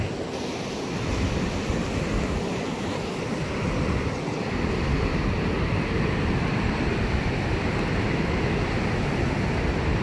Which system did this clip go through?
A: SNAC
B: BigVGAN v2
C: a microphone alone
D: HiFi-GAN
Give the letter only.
C